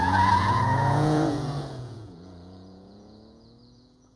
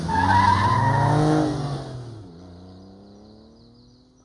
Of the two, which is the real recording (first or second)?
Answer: second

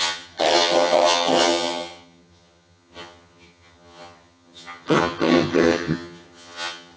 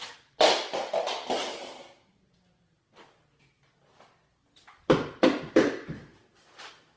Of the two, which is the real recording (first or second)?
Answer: second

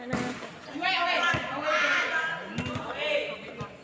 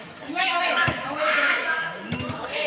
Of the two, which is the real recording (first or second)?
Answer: first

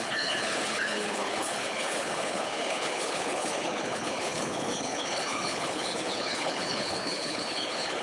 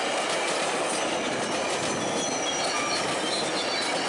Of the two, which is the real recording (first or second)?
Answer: second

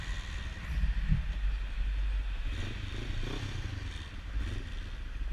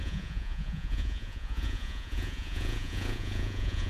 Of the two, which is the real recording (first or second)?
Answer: first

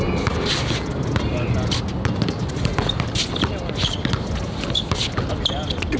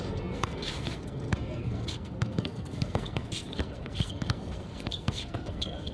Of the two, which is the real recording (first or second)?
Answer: first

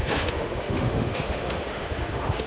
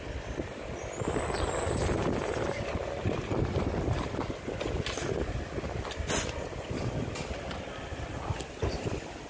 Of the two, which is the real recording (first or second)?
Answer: second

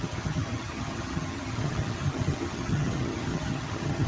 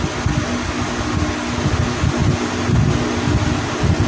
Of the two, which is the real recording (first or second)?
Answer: second